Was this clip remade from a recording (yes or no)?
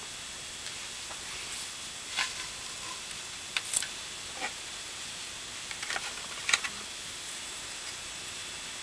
no